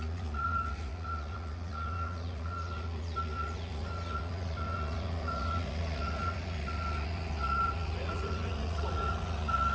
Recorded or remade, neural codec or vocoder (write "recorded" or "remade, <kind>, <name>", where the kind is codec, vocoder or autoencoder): remade, vocoder, Vocos